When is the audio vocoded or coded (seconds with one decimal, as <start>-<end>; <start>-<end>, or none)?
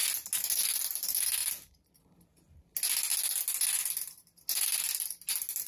none